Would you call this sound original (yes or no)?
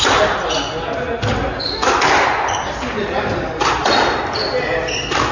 yes